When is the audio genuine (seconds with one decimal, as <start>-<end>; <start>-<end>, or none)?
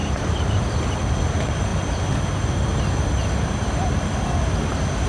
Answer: 0.8-5.1